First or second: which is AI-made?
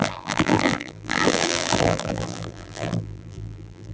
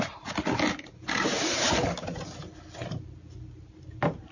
first